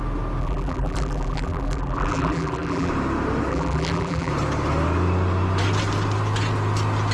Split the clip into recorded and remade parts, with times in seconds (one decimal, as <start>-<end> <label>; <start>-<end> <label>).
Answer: 0.0-0.4 recorded; 0.4-2.9 remade; 2.9-3.5 recorded; 3.5-4.3 remade; 4.3-7.1 recorded